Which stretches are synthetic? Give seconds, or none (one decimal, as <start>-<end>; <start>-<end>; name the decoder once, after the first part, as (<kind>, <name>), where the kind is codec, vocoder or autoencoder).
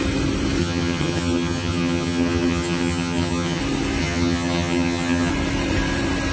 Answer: 0.6-3.6 (vocoder, HiFi-GAN); 4.0-5.3